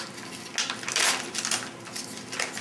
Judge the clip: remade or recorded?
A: recorded